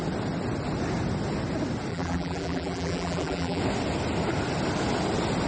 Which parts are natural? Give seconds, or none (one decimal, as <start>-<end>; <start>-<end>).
0.0-1.9; 3.6-5.5